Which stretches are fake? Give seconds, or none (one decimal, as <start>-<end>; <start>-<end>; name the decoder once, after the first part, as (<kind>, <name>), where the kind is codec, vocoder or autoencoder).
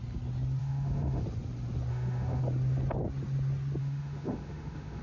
0.6-1.2 (autoencoder, DAC-VAE); 1.9-2.4; 3.8-5.0